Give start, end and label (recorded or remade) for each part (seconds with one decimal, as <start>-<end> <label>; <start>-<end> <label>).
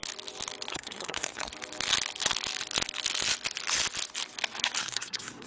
0.0-0.7 recorded; 0.7-1.5 remade; 1.5-4.8 recorded; 4.8-5.5 remade